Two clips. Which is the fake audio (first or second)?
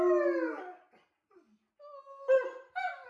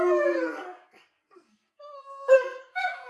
second